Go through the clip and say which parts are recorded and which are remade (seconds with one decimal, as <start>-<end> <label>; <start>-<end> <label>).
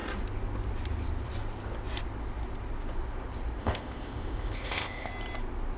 0.0-3.6 recorded; 3.6-5.1 remade; 5.1-5.8 recorded